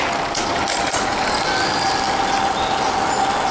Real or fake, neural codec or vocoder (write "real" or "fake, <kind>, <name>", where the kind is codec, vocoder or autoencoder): real